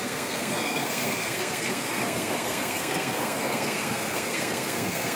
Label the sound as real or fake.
fake